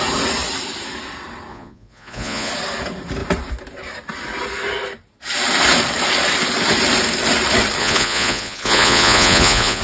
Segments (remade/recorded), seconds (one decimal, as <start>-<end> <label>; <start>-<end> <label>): 0.0-1.5 recorded; 1.5-2.5 remade; 2.5-7.8 recorded; 7.8-9.8 remade